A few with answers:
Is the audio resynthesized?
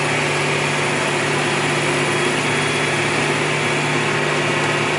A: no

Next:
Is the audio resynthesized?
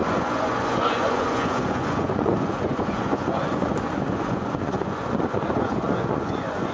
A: yes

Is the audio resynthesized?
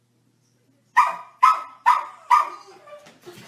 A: no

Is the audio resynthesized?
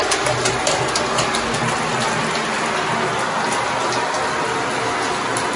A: no